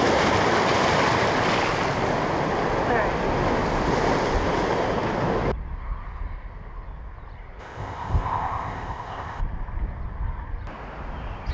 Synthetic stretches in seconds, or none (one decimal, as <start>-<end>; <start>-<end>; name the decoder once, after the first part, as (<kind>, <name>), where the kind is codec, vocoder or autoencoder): 7.6-9.4 (codec, ZipCodec)